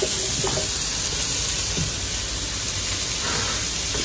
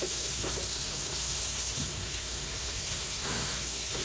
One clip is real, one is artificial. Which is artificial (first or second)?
second